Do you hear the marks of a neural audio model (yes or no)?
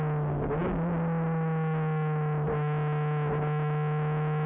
no